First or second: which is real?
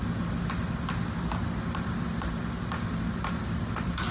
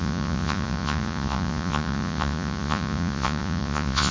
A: first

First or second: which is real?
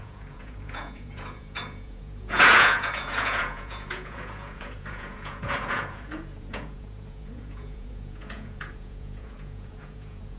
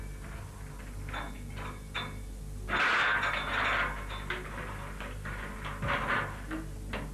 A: second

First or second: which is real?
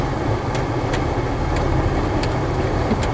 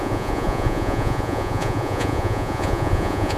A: first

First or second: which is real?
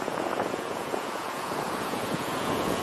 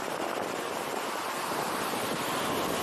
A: second